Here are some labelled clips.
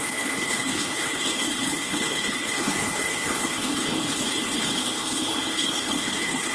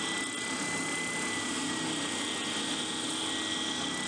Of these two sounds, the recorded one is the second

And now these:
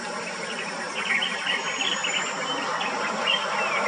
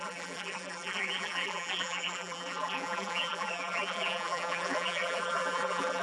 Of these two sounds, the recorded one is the first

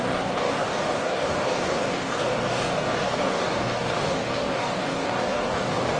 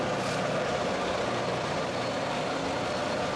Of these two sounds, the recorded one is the second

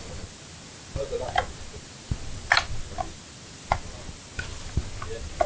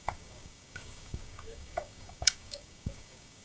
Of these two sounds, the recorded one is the first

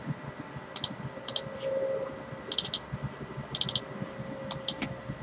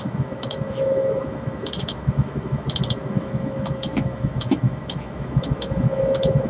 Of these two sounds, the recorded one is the first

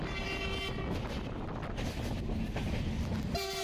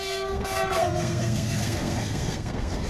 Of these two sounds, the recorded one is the first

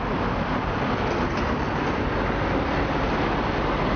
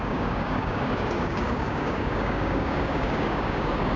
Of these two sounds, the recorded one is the first